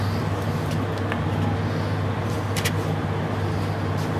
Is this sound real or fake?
real